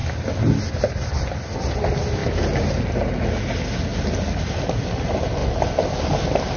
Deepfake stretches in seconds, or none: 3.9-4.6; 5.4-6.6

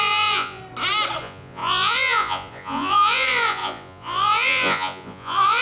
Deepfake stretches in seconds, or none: 0.0-0.6; 1.2-5.6

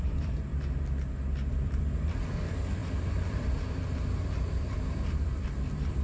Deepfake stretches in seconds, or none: 0.0-0.5; 1.5-6.0